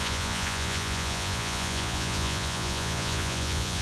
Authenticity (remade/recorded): remade